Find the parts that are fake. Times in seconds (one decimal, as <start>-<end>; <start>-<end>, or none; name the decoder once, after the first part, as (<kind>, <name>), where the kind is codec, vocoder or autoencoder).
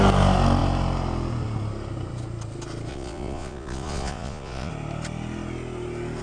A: 2.9-4.7 (vocoder, Vocos)